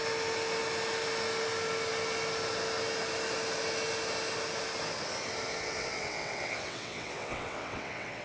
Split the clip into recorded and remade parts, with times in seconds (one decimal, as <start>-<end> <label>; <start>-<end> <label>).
0.0-5.5 recorded; 5.5-8.2 remade